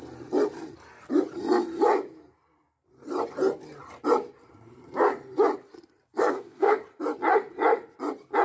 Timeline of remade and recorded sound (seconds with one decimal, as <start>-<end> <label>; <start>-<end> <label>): 0.0-6.2 recorded; 6.2-6.8 remade; 6.8-8.4 recorded